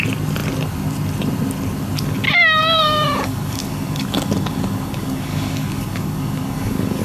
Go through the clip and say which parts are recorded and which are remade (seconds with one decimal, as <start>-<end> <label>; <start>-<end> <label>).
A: 0.0-2.6 recorded; 2.6-7.0 remade